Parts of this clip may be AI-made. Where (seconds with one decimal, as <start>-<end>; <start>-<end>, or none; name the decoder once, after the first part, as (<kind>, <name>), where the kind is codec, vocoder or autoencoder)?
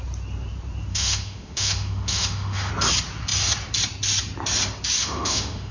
0.9-2.7 (autoencoder, DAC-VAE); 5.0-5.7